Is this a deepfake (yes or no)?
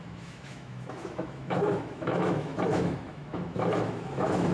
yes